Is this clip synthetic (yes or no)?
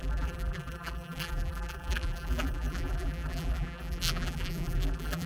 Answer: yes